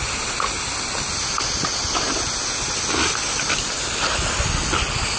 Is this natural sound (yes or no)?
yes